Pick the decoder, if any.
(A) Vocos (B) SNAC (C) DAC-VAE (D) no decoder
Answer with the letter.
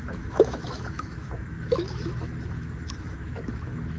C